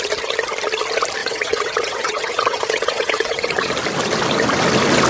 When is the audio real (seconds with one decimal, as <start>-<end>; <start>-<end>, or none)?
0.0-1.2; 3.7-5.1